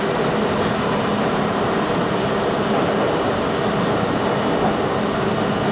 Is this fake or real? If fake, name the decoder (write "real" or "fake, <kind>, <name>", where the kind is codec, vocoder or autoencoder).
real